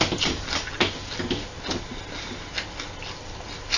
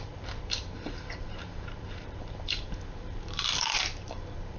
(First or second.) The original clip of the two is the first